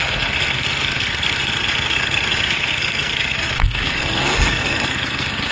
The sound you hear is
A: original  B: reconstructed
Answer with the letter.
B